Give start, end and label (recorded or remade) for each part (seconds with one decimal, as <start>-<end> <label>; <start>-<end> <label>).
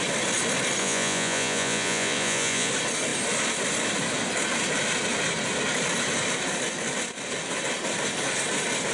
0.0-0.8 recorded; 0.8-2.7 remade; 2.7-8.9 recorded